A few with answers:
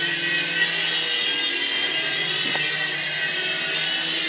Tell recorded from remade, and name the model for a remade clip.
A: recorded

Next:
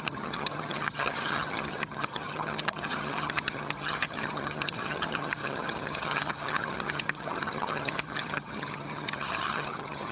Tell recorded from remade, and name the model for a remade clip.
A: remade, vocoder, HiFi-GAN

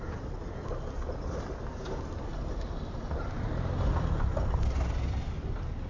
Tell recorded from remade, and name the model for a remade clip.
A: recorded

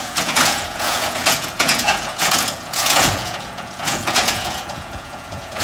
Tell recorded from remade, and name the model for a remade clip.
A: remade, vocoder, Vocos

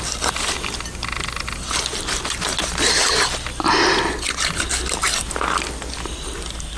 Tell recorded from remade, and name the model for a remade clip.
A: recorded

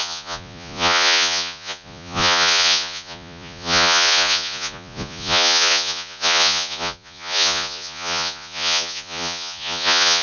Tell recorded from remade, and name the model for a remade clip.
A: remade, vocoder, Vocos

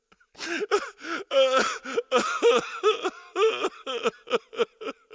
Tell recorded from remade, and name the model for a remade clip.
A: recorded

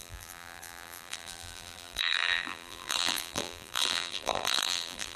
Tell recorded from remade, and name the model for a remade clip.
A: remade, vocoder, BigVGAN v2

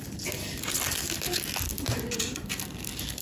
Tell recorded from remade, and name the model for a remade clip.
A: recorded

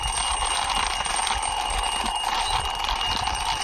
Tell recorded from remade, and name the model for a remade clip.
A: recorded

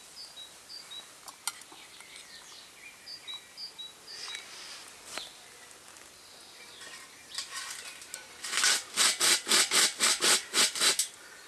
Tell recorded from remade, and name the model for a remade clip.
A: recorded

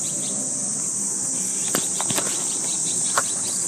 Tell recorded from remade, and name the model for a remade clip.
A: remade, vocoder, BigVGAN v2